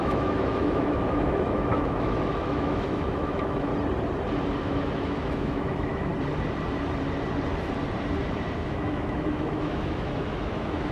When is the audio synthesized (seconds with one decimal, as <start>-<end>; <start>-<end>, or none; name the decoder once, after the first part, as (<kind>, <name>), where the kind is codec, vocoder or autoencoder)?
0.0-3.7 (autoencoder, DAC-VAE); 4.6-6.1; 8.7-10.9